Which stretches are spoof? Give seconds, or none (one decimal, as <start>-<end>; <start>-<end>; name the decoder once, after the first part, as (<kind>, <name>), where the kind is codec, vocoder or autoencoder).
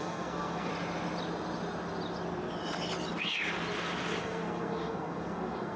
0.0-0.7 (codec, SNAC); 4.2-5.8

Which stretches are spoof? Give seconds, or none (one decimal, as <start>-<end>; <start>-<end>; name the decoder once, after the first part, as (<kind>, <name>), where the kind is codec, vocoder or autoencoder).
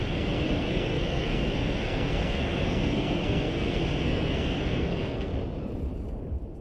0.0-5.3 (codec, SNAC)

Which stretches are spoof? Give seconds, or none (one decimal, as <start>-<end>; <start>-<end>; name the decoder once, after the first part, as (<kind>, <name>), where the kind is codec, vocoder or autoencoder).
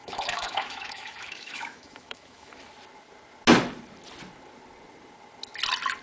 0.0-2.5 (autoencoder, DAC-VAE)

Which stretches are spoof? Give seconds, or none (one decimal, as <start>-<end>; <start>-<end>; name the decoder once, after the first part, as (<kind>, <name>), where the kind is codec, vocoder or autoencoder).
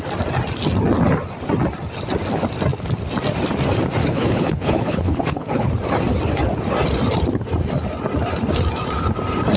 4.0-5.7 (codec, HILCodec)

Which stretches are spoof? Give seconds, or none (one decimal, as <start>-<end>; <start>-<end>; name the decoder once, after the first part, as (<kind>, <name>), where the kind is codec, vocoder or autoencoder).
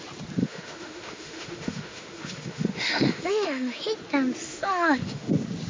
0.4-3.8 (autoencoder, DAC-VAE); 4.5-5.3